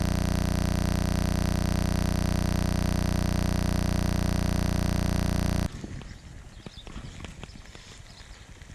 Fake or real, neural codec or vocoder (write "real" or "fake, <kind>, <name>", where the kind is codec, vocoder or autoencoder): real